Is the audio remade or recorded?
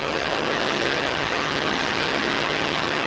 remade